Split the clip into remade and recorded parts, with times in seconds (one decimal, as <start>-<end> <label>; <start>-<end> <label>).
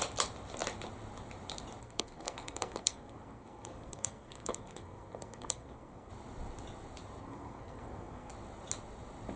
0.0-1.8 recorded; 1.8-6.1 remade; 6.1-7.2 recorded; 7.2-8.3 remade; 8.3-9.4 recorded